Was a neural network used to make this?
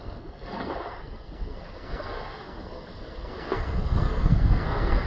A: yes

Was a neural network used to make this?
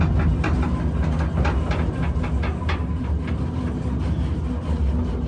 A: no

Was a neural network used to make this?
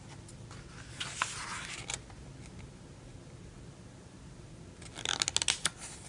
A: no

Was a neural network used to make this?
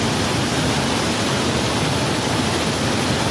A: no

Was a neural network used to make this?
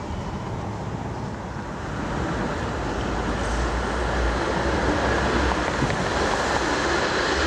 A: no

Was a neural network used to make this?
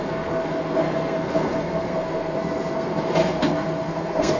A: yes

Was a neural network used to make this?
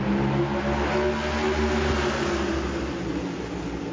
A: no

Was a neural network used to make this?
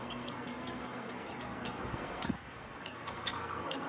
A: yes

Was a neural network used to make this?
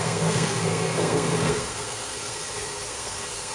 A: yes